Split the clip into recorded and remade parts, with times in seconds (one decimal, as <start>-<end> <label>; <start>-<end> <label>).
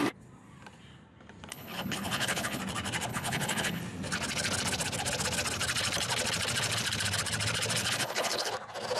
0.0-1.5 recorded; 1.5-2.6 remade; 2.6-3.1 recorded; 3.1-3.8 remade; 3.8-7.8 recorded; 7.8-8.5 remade; 8.5-9.0 recorded